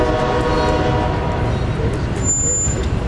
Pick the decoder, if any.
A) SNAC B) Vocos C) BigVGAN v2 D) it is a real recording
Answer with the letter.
D